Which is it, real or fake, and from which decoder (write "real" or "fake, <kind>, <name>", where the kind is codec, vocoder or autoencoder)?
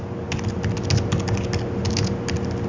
real